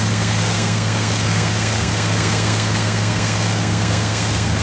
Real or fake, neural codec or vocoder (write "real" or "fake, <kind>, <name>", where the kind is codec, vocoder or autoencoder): fake, codec, SNAC